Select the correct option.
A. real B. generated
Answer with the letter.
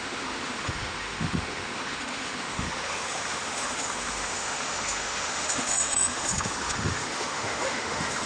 B